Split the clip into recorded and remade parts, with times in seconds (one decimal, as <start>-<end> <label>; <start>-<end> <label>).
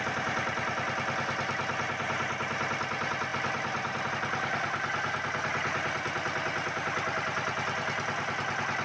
0.0-8.8 recorded